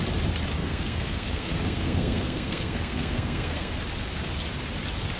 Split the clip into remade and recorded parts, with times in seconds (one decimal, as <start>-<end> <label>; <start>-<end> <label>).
0.0-0.6 recorded; 0.6-3.7 remade; 3.7-5.2 recorded